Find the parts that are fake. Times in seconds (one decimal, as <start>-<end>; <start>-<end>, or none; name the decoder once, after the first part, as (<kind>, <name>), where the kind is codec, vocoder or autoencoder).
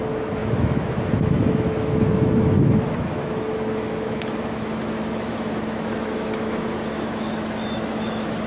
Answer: 0.0-8.5 (autoencoder, DAC-VAE)